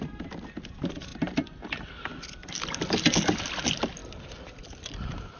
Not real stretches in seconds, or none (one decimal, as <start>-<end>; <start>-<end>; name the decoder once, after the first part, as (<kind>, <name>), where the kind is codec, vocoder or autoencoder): none